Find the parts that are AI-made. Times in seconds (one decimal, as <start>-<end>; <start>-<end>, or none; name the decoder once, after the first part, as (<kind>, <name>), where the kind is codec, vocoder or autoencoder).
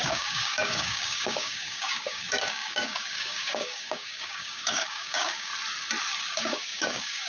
0.0-5.5 (codec, DAC); 6.2-7.3